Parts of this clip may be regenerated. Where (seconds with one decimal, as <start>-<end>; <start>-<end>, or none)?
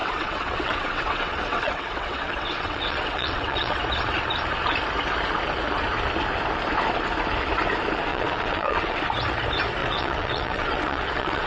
0.0-3.8; 8.1-9.0; 9.8-11.5